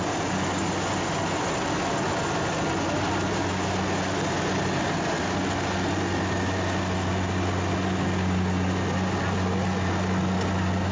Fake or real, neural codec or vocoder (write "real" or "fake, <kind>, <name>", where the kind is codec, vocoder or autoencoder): real